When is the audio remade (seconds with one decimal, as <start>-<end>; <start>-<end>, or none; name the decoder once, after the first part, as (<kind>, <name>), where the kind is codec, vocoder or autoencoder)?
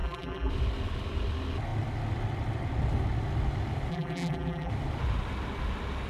0.0-0.5 (vocoder, BigVGAN v2); 3.9-4.7